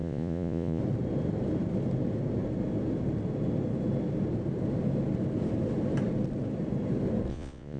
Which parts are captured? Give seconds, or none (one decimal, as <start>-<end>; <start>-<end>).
0.8-7.3